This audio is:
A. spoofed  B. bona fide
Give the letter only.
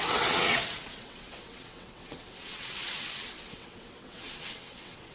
A